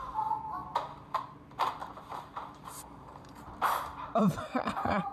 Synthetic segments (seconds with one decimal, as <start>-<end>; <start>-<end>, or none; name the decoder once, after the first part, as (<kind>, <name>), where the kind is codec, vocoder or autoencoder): 0.0-0.6 (vocoder, BigVGAN v2); 1.1-5.1